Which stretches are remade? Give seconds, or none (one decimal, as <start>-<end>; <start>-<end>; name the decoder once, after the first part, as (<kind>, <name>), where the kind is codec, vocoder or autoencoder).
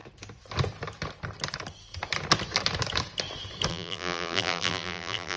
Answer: 3.7-5.4 (vocoder, BigVGAN v2)